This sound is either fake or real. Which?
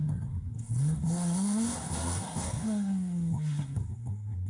fake